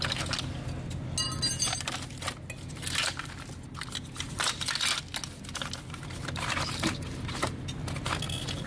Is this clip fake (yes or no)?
no